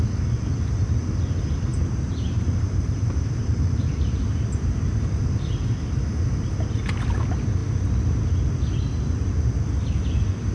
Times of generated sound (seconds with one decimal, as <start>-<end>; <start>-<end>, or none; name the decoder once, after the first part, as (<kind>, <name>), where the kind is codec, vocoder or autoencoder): 1.7-5.2 (vocoder, BigVGAN v2)